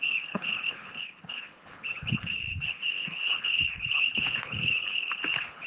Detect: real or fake fake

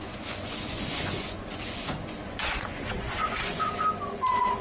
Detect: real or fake fake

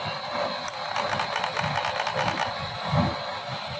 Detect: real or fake real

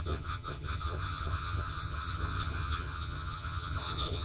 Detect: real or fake fake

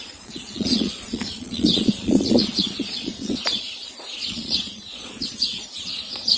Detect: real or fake fake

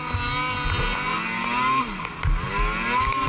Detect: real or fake real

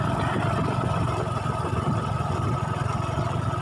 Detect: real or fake real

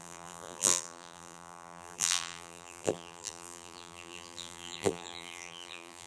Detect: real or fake fake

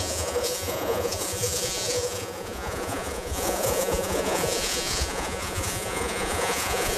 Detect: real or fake fake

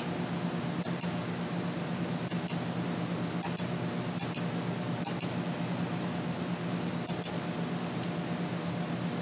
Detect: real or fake real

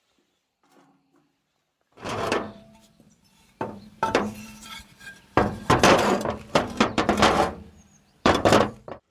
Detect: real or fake fake